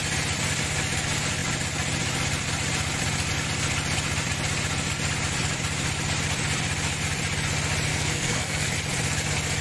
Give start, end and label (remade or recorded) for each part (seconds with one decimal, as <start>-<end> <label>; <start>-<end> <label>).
0.0-7.9 recorded; 7.9-8.7 remade; 8.7-9.6 recorded